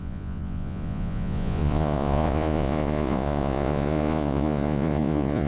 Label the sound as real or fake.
fake